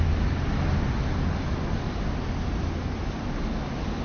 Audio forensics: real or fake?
real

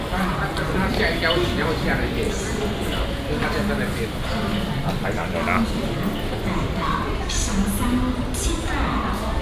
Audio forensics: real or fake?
real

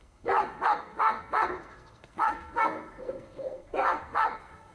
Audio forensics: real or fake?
fake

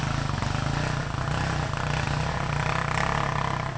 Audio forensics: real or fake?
real